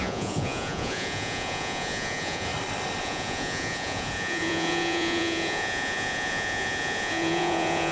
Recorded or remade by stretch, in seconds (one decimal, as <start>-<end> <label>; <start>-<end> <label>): 0.0-2.5 remade; 2.5-3.0 recorded; 3.0-7.9 remade